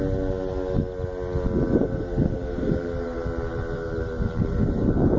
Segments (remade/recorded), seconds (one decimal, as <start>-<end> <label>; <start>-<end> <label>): 0.0-1.8 recorded; 1.8-5.2 remade